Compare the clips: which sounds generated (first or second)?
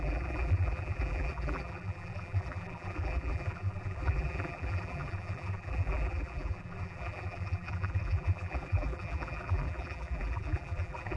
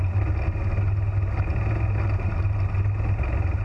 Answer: first